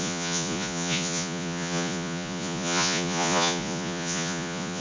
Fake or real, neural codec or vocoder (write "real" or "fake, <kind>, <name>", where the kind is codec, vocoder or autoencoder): fake, vocoder, Vocos